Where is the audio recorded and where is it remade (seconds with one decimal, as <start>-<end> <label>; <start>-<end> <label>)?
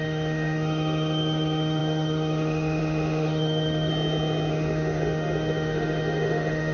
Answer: 0.0-3.9 remade; 3.9-4.5 recorded; 4.5-6.7 remade